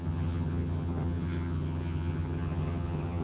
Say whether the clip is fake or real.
fake